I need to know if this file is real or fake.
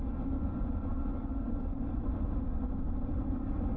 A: real